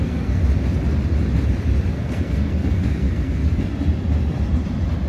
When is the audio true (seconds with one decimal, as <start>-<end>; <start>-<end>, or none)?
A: 0.4-1.9; 3.7-5.1